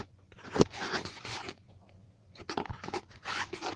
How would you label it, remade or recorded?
remade